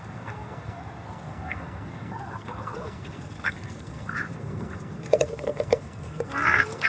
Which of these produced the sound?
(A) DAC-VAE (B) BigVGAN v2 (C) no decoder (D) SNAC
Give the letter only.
D